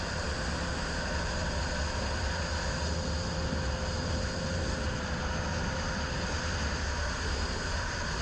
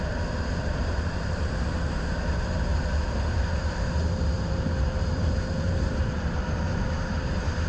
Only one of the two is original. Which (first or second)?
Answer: first